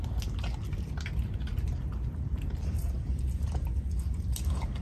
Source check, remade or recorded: recorded